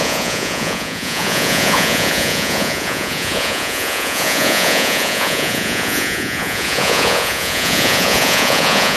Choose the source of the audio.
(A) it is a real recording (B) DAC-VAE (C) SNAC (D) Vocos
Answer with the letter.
D